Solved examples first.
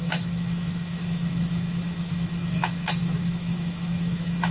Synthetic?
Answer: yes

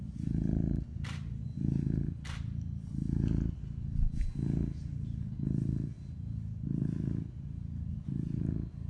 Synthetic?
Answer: no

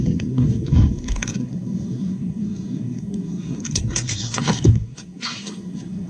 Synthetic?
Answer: yes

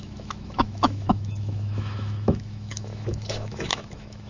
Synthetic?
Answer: yes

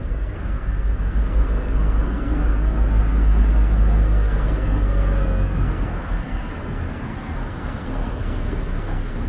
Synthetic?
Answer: yes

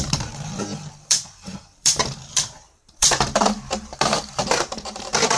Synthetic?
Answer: yes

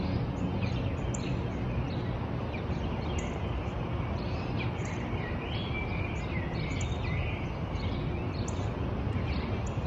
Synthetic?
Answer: no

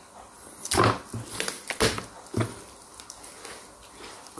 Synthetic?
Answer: no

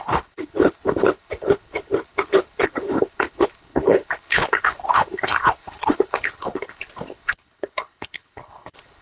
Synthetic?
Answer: yes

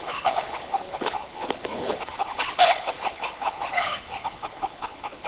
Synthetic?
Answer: yes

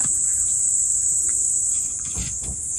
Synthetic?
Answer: yes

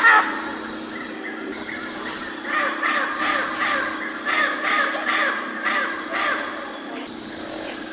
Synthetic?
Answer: no